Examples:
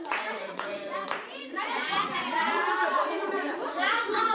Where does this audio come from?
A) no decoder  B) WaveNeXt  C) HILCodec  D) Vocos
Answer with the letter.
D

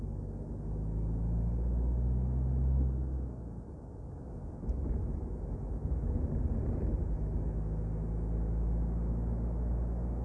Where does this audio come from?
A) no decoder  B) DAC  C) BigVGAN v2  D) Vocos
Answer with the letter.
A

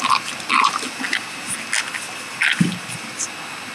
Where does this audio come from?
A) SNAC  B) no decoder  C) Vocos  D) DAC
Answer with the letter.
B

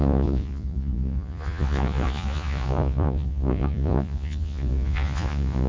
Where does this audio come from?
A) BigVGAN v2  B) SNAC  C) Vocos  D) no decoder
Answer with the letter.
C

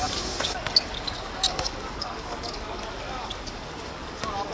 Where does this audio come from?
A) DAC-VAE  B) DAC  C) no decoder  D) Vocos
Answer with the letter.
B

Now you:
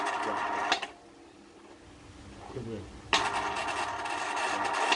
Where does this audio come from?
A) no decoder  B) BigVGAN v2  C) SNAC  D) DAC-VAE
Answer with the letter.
A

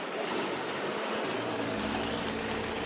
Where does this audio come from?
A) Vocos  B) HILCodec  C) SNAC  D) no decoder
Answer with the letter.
D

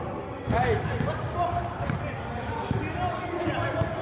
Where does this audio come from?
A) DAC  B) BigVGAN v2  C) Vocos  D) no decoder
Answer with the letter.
D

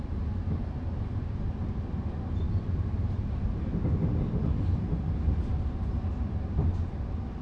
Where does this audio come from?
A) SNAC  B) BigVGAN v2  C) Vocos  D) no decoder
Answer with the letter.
D